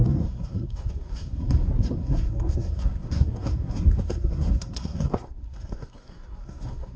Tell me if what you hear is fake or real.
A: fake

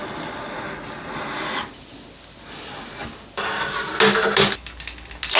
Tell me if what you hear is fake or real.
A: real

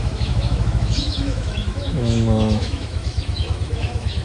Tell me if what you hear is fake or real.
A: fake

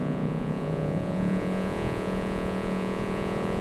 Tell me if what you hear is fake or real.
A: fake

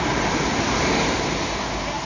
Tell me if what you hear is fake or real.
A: real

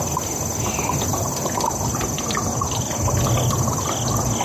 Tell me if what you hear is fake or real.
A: real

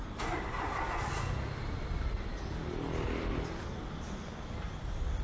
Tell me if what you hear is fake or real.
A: real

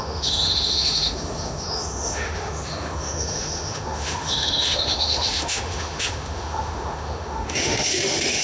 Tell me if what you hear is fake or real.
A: fake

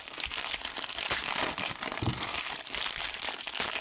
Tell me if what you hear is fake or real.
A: real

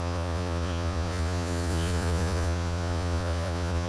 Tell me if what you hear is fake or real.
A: fake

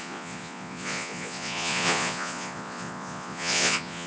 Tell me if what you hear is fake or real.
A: fake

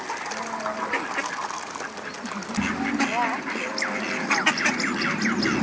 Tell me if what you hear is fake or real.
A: real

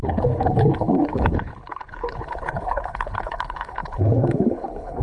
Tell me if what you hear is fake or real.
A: fake